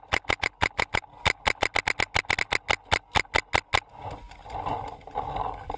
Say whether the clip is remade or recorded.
recorded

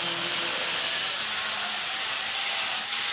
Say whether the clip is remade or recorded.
recorded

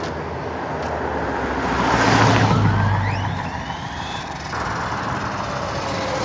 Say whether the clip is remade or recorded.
recorded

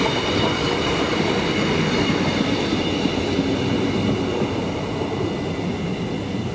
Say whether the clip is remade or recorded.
recorded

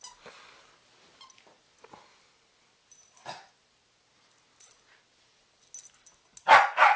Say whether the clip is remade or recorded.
recorded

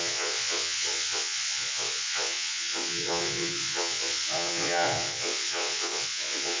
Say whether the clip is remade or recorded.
remade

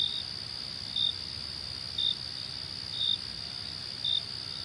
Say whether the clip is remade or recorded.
recorded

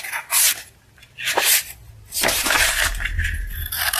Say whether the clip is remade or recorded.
recorded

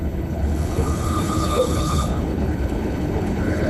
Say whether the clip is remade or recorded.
remade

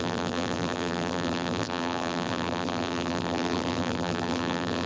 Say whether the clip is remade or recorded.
remade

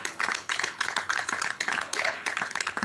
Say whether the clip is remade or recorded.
remade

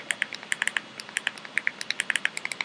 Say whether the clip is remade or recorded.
recorded